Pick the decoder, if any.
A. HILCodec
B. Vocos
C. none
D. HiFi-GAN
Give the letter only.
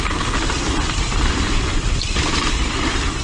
C